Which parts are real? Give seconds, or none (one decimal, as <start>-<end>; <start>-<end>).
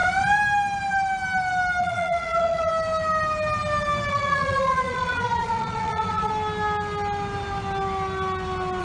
0.0-1.8; 2.7-4.1; 6.3-8.8